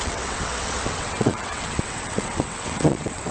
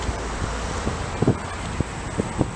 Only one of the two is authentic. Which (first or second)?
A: second